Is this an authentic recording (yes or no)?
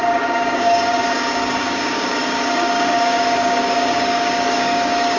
no